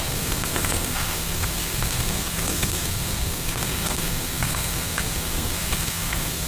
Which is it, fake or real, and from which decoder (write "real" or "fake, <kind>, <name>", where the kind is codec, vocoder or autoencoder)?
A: fake, codec, SNAC